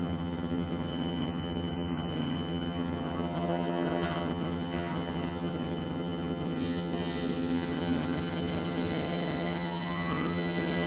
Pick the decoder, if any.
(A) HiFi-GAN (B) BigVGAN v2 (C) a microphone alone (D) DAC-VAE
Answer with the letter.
A